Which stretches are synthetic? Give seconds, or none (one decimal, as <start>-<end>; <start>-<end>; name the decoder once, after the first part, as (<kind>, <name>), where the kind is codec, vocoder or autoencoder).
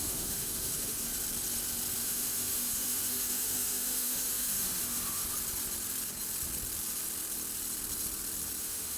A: 0.0-1.1 (autoencoder, DAC-VAE); 2.0-5.2; 8.6-9.0